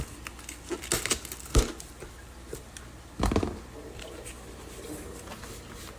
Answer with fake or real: real